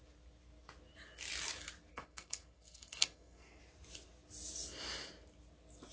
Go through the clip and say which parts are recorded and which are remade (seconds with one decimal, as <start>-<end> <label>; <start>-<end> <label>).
0.0-1.9 recorded; 1.9-3.6 remade; 3.6-5.9 recorded